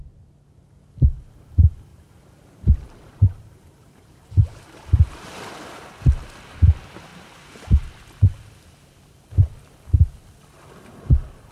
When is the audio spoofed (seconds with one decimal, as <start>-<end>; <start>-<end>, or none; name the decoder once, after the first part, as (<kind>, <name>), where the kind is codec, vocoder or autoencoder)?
1.9-5.9 (vocoder, BigVGAN v2); 7.1-7.9